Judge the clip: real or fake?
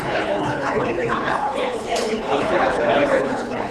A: fake